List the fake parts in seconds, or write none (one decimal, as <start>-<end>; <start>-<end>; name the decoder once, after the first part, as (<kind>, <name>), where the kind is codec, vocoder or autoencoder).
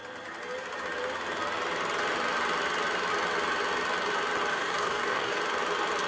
4.5-5.4 (codec, DAC)